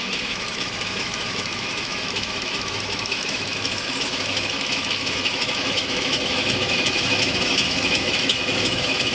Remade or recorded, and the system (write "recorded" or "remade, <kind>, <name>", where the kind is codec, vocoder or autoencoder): remade, autoencoder, DAC-VAE